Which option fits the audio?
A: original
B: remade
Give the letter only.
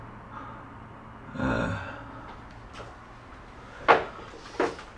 A